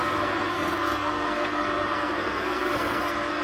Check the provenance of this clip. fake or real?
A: fake